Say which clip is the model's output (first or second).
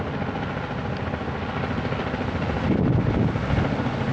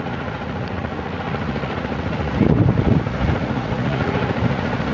second